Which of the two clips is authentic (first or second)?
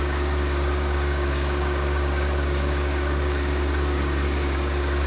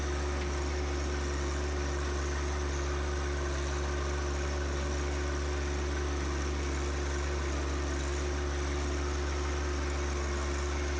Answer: second